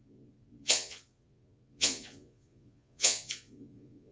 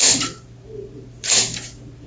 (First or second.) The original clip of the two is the second